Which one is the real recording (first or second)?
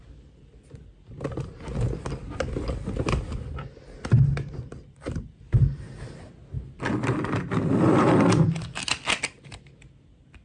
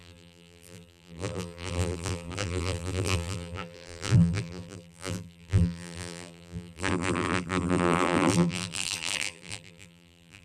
first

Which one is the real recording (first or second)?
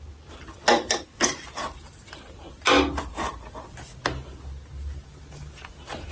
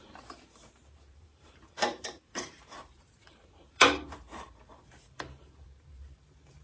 first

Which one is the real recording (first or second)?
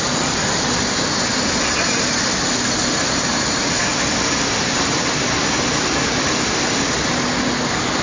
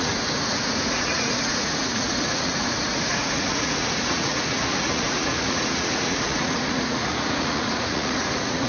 first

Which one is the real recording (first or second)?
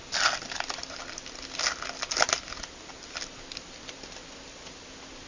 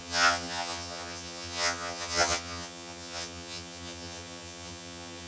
first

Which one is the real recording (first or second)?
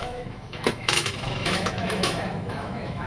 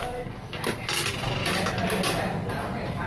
second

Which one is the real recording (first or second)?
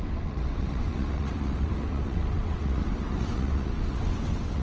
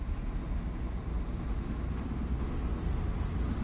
second